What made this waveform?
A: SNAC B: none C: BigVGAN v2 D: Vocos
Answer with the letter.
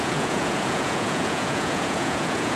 D